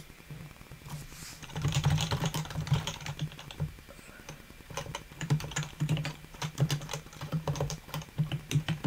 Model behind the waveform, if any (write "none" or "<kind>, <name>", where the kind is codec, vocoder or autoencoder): vocoder, BigVGAN v2